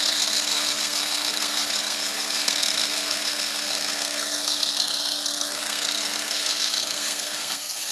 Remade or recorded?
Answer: remade